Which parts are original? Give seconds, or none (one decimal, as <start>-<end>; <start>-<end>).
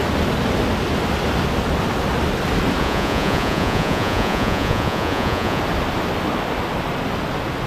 0.0-2.8; 5.6-7.7